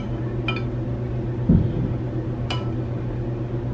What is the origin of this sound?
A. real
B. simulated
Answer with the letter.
A